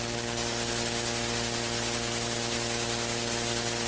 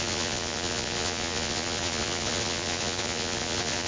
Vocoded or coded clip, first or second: second